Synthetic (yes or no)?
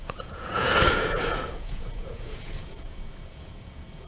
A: yes